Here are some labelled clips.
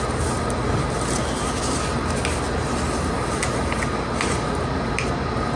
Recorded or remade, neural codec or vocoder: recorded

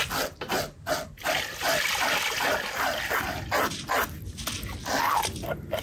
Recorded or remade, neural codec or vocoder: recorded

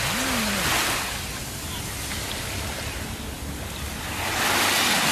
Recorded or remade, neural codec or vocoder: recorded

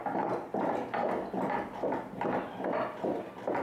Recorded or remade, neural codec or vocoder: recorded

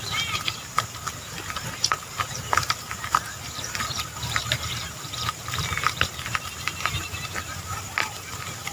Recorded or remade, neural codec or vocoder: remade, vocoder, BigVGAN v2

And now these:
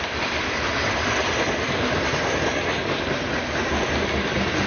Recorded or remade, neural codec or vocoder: recorded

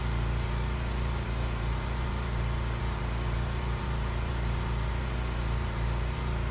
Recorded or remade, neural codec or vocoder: remade, vocoder, BigVGAN v2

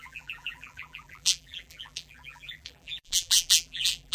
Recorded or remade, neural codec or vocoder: remade, vocoder, BigVGAN v2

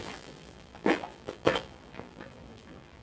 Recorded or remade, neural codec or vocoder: remade, vocoder, BigVGAN v2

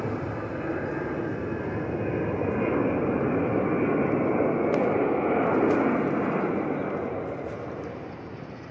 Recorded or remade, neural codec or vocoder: recorded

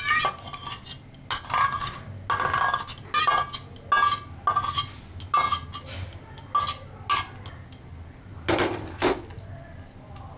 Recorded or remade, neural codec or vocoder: recorded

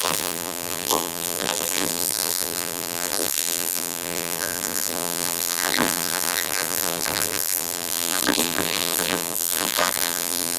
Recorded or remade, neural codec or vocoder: remade, vocoder, BigVGAN v2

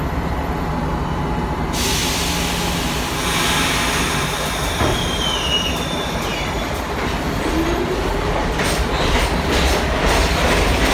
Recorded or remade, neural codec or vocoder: recorded